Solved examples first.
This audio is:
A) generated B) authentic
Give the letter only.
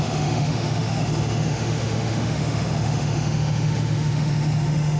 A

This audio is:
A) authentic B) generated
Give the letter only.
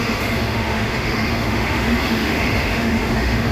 B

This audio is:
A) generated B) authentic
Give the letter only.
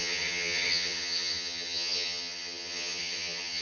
A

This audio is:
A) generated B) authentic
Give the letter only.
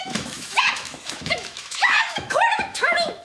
A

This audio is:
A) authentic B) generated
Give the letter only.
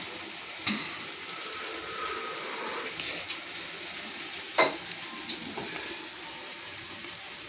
A